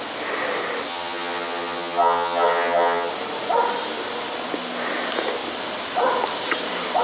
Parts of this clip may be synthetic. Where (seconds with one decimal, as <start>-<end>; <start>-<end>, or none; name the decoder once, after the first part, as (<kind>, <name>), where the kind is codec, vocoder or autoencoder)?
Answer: 0.9-3.1 (vocoder, HiFi-GAN)